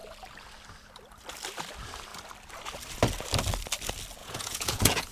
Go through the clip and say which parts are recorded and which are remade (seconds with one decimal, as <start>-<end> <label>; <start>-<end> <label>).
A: 0.0-4.2 recorded; 4.2-5.1 remade